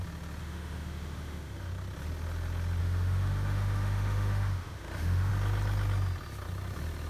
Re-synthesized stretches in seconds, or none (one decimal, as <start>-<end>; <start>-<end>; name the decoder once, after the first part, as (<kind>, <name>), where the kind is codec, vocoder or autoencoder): 0.4-1.7 (autoencoder, DAC-VAE); 2.8-5.3

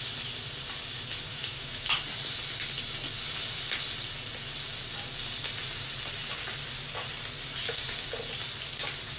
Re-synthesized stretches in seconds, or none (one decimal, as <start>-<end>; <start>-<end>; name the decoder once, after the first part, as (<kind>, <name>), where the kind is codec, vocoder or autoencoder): 1.3-2.0 (autoencoder, DAC-VAE)

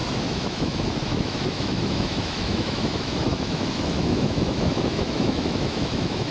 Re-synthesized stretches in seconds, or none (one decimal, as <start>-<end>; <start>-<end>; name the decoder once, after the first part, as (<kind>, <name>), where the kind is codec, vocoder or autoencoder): 0.0-6.3 (autoencoder, DAC-VAE)

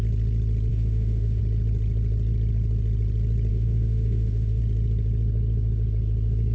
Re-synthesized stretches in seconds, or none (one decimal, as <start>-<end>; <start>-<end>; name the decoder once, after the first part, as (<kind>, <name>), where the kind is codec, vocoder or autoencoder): 0.7-1.4 (autoencoder, DAC-VAE); 3.5-4.6

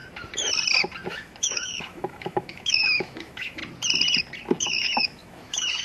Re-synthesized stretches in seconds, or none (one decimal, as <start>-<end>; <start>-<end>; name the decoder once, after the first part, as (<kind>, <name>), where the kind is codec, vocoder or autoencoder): 1.1-3.6 (autoencoder, DAC-VAE); 4.6-5.8

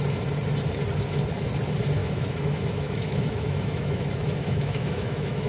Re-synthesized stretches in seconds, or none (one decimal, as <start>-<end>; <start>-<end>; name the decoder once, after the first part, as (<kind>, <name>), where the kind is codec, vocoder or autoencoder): 2.0-5.5 (autoencoder, DAC-VAE)

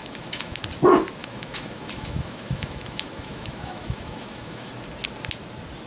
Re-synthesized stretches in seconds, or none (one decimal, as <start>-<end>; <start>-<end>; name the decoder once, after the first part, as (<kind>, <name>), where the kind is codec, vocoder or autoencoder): 0.0-0.6 (autoencoder, DAC-VAE); 1.2-4.7